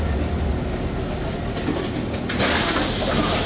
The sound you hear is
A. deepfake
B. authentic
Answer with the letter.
B